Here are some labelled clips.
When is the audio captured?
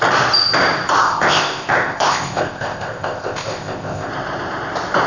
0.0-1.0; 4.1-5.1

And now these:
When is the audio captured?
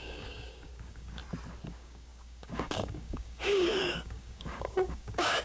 1.2-1.7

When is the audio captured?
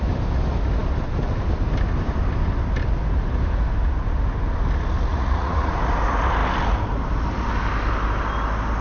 0.0-5.1; 5.7-8.8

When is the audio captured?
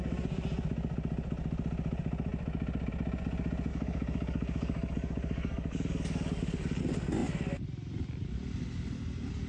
0.0-3.7; 6.8-9.5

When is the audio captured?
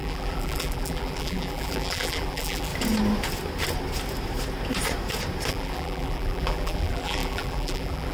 2.7-5.5